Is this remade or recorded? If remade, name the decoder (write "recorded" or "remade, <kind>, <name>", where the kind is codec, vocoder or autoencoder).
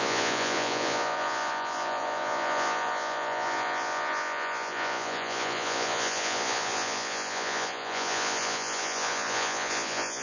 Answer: remade, vocoder, Vocos